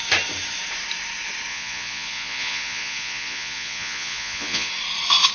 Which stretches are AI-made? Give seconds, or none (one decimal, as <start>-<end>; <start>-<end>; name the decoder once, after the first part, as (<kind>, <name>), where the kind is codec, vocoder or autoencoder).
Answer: 1.5-4.7 (vocoder, Vocos)

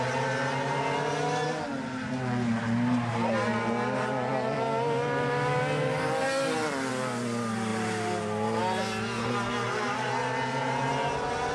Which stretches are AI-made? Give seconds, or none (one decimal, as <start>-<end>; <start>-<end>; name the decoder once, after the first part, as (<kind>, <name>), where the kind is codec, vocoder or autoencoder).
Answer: none

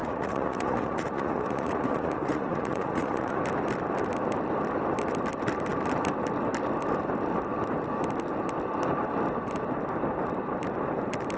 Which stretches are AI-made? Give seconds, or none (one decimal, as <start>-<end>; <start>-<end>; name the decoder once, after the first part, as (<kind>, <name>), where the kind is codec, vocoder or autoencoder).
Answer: 0.0-3.4 (vocoder, Vocos)